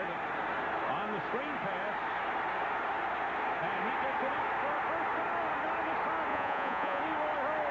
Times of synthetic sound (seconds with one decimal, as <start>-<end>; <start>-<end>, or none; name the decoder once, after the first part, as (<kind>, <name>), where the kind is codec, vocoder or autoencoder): 6.3-7.0 (vocoder, Vocos)